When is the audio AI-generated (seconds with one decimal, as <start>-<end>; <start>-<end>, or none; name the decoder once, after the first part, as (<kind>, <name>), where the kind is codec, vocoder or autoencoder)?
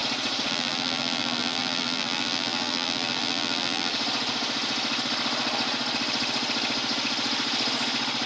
0.5-3.9 (vocoder, BigVGAN v2)